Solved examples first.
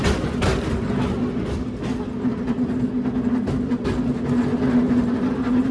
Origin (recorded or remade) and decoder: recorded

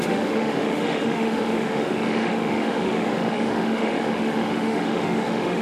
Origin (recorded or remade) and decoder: remade, autoencoder, DAC-VAE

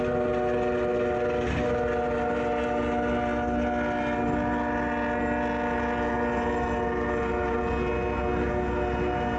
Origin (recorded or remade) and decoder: recorded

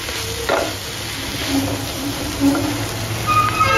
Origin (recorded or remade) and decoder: recorded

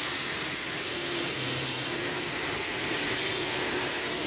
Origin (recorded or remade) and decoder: recorded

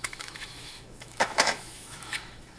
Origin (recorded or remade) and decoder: remade, autoencoder, DAC-VAE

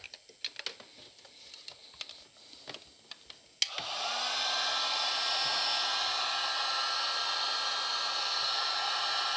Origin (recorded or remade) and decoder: recorded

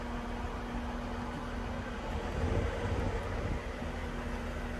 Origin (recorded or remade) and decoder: recorded